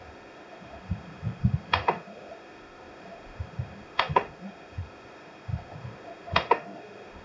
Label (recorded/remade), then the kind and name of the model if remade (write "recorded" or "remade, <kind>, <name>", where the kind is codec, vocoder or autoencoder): remade, autoencoder, DAC-VAE